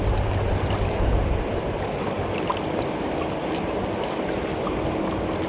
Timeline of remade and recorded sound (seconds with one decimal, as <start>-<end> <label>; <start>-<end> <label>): 0.0-5.5 recorded